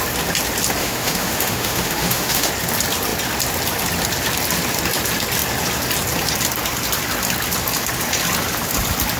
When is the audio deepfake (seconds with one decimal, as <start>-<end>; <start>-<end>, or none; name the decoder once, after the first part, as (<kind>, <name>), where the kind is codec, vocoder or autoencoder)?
0.8-2.5 (autoencoder, DAC-VAE)

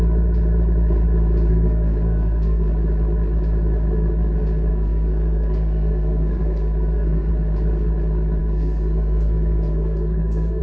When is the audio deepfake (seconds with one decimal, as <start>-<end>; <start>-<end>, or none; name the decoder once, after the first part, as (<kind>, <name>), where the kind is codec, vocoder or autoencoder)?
1.5-2.7 (codec, SNAC); 4.7-7.3; 8.4-10.6

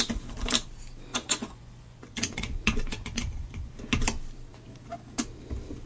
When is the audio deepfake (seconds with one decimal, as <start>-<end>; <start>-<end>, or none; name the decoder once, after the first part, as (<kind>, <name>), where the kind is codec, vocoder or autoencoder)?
1.1-3.7 (vocoder, Vocos)

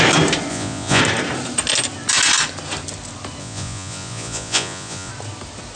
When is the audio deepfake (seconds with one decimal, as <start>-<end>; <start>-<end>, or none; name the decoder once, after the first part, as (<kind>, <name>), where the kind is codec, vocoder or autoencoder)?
0.5-1.0 (vocoder, Vocos); 3.4-5.1

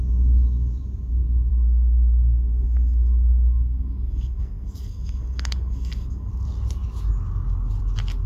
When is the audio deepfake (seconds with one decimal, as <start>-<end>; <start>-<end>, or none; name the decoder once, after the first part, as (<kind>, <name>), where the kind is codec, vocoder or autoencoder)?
1.5-6.3 (codec, SNAC)